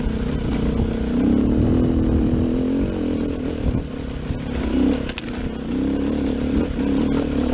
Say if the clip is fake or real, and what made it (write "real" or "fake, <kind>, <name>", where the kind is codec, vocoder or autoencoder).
real